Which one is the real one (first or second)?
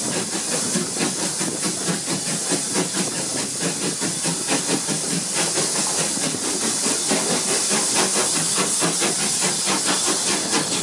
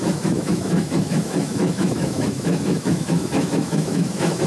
first